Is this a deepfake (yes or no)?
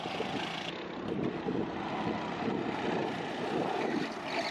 no